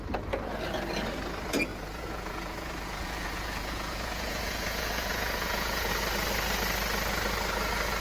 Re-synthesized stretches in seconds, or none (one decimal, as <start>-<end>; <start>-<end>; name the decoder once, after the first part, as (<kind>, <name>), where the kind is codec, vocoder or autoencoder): 1.7-5.9 (vocoder, Vocos)